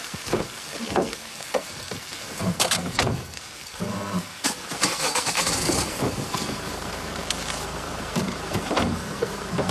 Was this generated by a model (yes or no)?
yes